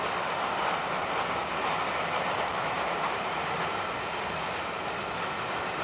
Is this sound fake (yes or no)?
yes